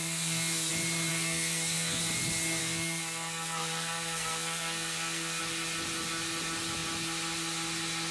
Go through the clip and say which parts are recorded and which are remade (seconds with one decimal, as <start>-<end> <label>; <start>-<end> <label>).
0.0-0.7 remade; 0.7-1.1 recorded; 1.1-2.0 remade; 2.0-2.6 recorded; 2.6-5.4 remade; 5.4-8.1 recorded